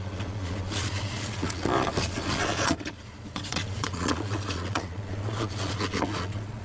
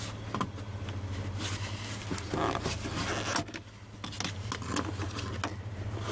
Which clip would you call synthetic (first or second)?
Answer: first